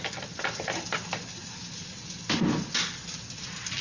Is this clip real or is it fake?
real